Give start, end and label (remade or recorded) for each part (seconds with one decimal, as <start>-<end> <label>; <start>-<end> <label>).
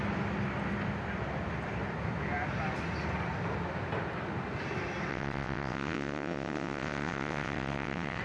0.0-5.1 recorded; 5.1-8.2 remade